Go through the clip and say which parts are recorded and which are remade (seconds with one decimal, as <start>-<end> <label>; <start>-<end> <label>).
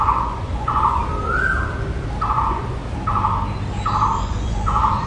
0.0-1.0 remade; 1.0-2.3 recorded; 2.3-2.8 remade; 2.8-4.2 recorded; 4.2-5.1 remade